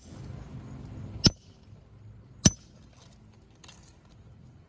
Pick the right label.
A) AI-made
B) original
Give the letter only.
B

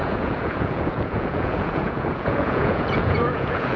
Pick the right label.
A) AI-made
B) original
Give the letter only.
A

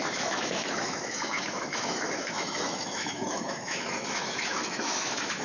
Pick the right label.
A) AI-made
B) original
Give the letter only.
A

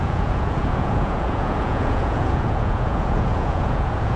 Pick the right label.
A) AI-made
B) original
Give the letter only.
A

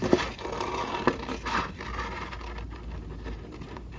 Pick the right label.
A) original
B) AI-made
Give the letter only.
A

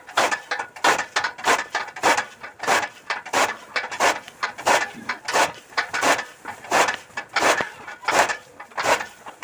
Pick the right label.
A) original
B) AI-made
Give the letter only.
A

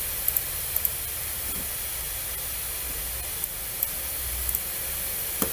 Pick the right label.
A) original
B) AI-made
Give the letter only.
A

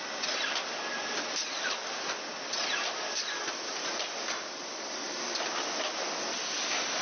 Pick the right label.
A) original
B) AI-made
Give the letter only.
A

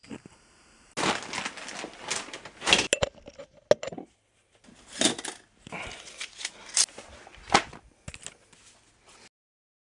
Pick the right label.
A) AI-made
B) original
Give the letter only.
B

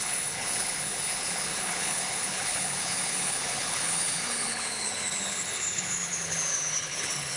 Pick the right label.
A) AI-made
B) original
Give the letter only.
A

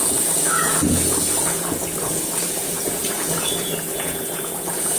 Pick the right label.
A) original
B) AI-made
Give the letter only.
B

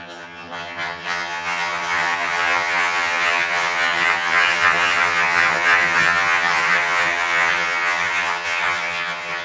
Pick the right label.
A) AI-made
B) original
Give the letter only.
A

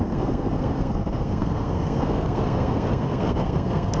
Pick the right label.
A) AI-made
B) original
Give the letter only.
A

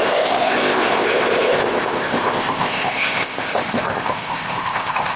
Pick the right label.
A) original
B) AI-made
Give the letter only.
B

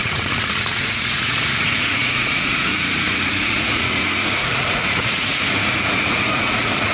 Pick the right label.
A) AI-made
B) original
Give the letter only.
A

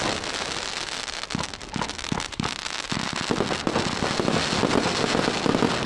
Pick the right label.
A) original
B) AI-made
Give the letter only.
A